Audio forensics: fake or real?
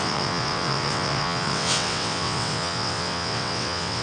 fake